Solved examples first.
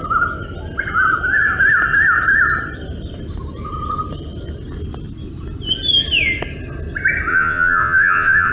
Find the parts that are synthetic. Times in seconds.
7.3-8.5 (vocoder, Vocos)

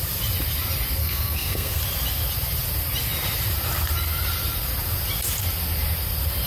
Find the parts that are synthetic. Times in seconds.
1.0-1.8 (codec, SNAC)

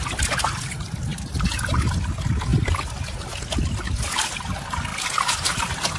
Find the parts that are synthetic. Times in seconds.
1.1-1.8 (vocoder, BigVGAN v2)

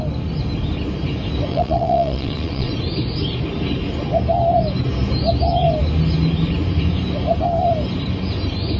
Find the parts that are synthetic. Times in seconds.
1.5-2.7 (vocoder, WaveNeXt)

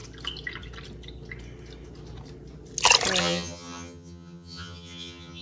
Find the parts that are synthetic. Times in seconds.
3.2-5.4 (vocoder, HiFi-GAN)

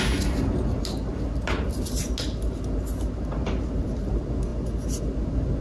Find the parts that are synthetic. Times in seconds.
none

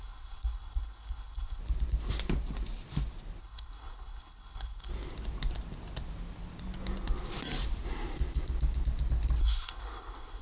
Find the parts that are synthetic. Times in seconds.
0.0-1.6 (codec, HILCodec); 3.4-4.9; 9.4-10.4